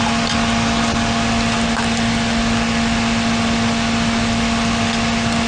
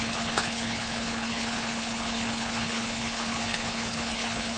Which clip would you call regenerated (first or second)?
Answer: second